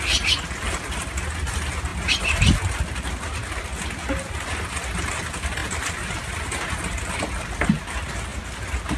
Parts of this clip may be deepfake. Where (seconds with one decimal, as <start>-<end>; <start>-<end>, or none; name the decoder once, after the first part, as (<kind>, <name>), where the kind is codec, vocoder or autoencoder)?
none